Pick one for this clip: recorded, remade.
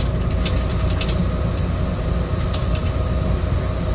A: recorded